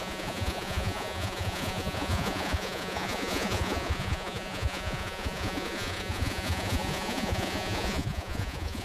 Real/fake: fake